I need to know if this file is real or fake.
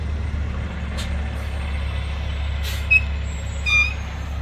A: real